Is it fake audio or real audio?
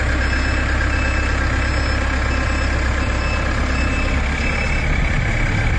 real